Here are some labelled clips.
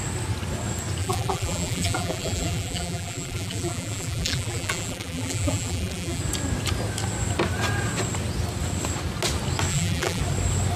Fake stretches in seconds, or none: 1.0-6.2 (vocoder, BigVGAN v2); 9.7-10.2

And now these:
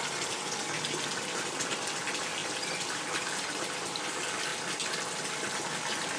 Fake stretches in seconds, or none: 2.4-4.1 (vocoder, BigVGAN v2); 4.5-5.1